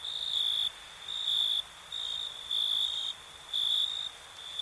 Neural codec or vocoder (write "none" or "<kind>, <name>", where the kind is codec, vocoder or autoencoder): none